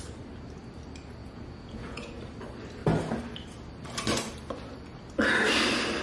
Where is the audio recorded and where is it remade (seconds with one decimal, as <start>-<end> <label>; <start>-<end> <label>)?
0.0-1.2 recorded; 1.2-2.2 remade; 2.2-6.0 recorded